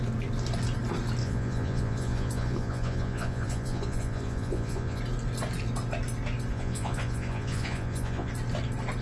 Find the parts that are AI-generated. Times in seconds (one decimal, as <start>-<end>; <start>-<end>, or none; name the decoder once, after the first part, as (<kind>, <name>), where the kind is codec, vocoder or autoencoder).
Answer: 1.2-5.0 (vocoder, Vocos); 6.5-8.3